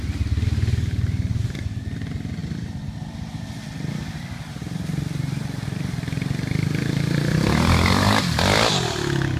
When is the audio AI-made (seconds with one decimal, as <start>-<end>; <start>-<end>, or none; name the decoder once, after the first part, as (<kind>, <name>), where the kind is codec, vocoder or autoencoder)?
2.4-3.6 (vocoder, BigVGAN v2)